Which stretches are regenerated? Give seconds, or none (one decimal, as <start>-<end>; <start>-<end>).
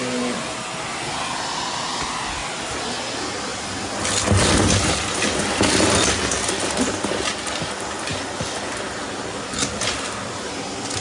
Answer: none